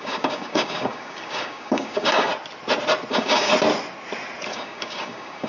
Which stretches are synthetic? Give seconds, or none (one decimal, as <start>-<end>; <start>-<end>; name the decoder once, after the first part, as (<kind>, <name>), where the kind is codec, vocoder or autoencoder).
0.0-2.3 (codec, DAC); 3.1-3.5; 4.5-5.5